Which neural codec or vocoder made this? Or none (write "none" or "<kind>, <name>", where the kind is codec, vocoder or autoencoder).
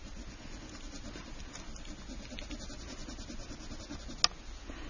none